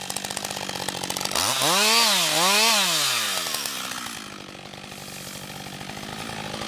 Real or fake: real